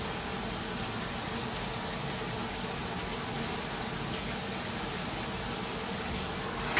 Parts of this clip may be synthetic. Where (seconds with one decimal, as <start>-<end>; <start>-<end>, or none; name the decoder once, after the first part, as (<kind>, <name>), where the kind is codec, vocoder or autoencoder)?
none

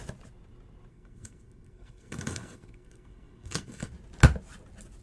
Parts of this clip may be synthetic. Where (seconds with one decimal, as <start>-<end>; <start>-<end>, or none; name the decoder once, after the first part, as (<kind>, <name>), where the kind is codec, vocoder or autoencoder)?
0.9-3.9 (codec, SNAC)

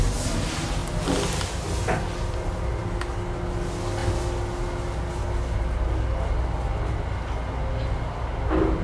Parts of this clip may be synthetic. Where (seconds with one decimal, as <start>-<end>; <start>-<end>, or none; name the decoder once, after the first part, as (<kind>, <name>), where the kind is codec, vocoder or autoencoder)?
none

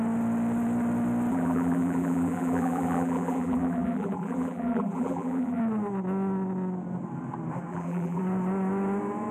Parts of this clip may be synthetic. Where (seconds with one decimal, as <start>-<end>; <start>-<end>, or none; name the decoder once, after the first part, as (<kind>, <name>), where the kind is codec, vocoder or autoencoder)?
1.3-5.6 (vocoder, BigVGAN v2); 7.7-8.2